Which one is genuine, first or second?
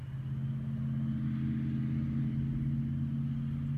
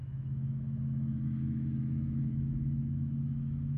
first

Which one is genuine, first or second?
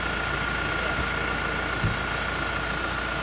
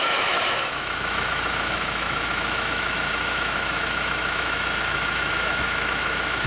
first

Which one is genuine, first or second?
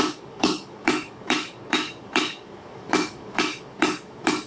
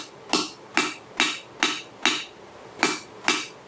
second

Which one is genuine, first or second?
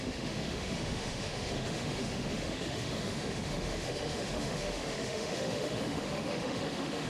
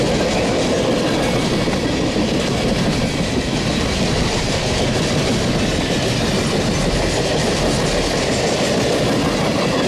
second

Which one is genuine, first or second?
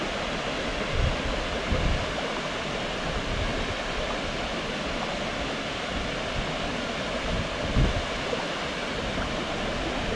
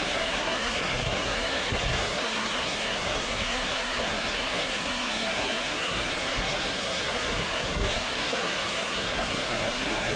first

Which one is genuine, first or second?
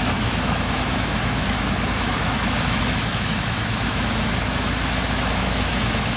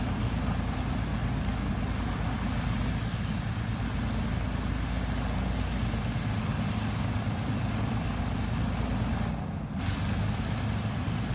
second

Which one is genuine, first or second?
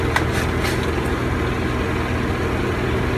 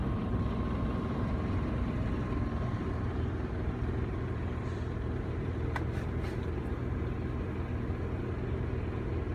first